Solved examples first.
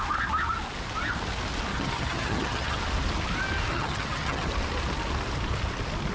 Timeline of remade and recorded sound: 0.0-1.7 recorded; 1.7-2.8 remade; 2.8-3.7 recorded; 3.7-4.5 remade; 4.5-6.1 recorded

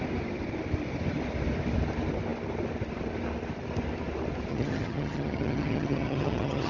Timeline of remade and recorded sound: 0.0-4.5 recorded; 4.5-6.7 remade

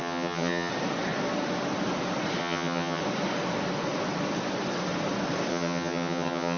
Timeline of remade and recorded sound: 0.0-0.7 remade; 0.7-2.4 recorded; 2.4-3.0 remade; 3.0-5.5 recorded; 5.5-6.6 remade

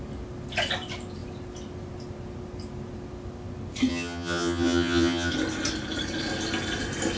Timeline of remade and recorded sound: 0.0-3.9 recorded; 3.9-5.3 remade; 5.3-7.2 recorded

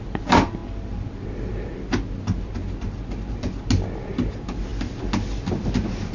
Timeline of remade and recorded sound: 0.0-6.1 recorded

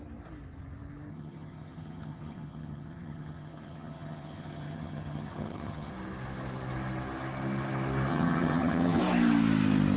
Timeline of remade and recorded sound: 0.0-1.1 recorded; 1.1-5.9 remade; 5.9-8.1 recorded; 8.1-9.0 remade; 9.0-10.0 recorded